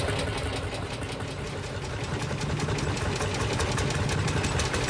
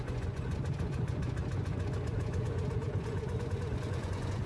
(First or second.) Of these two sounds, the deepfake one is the second